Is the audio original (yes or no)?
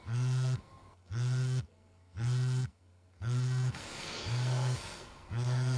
no